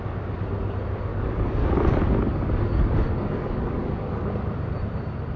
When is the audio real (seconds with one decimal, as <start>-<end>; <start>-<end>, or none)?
0.0-1.1; 4.3-5.4